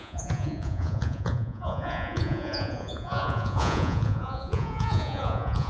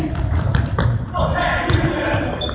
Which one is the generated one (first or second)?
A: first